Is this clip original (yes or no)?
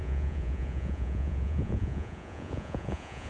no